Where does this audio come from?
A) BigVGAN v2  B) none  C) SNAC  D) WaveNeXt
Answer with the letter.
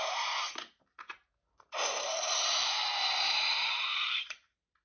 A